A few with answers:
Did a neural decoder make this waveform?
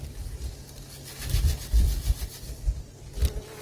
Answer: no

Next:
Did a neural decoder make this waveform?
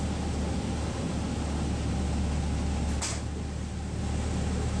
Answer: no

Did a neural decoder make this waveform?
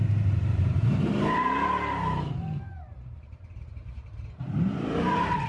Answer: yes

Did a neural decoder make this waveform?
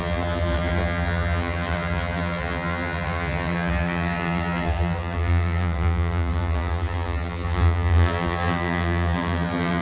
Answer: yes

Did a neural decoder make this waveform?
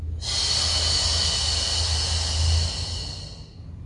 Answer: no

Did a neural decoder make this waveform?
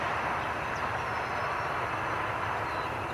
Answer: no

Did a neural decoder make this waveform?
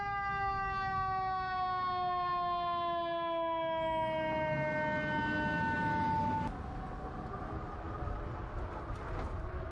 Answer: no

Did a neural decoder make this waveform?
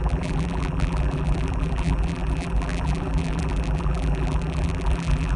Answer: yes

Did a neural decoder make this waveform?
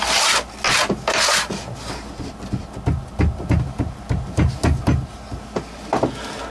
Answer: no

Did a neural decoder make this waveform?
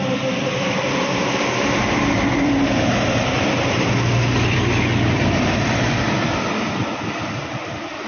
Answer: yes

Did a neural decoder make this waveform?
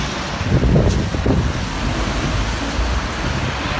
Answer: no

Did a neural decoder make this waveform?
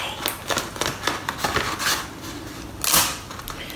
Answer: no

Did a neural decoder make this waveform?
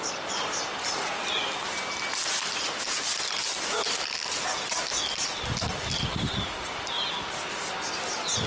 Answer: no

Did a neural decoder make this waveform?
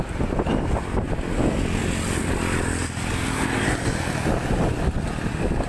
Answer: no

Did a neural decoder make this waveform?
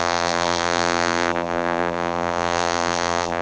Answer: yes